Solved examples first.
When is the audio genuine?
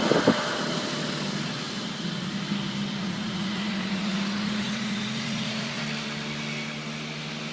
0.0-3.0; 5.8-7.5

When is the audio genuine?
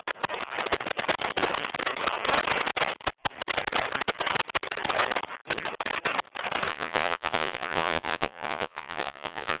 0.0-6.7